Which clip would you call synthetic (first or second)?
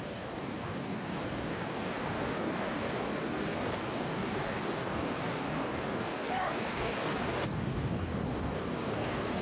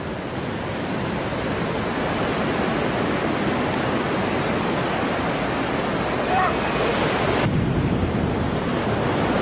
first